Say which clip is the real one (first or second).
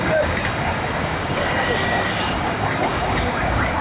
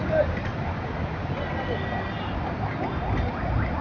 second